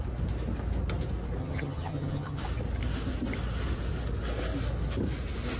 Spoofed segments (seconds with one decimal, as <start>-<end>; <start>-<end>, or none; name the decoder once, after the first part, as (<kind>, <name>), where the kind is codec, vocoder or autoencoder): 1.4-2.4 (vocoder, HiFi-GAN)